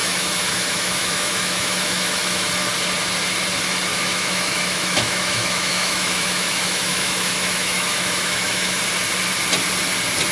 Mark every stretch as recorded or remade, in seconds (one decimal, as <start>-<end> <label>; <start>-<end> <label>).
0.0-2.5 remade; 2.5-3.9 recorded; 3.9-8.8 remade; 8.8-10.3 recorded